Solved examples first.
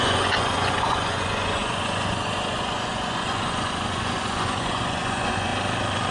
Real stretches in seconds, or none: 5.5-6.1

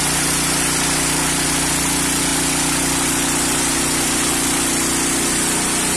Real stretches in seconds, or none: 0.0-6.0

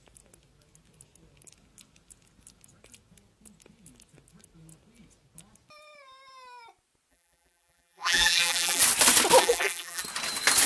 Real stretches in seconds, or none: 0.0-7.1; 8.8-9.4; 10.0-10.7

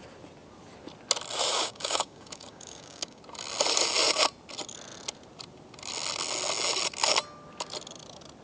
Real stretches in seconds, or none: 0.0-1.5; 3.2-8.4

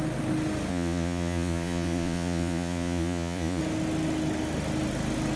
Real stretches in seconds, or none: 0.0-0.7; 3.6-5.4

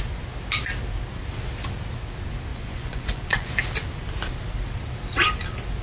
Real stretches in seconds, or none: 0.0-2.5; 3.5-5.8